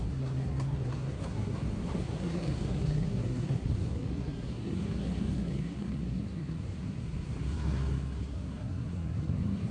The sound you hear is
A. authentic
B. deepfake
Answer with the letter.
B